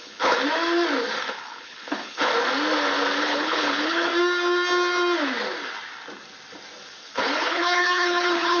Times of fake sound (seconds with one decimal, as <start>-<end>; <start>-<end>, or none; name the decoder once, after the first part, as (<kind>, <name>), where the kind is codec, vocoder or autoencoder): 0.0-0.4 (codec, HILCodec); 1.3-2.3; 3.2-4.1; 7.0-8.6